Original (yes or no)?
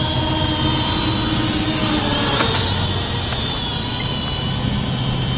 yes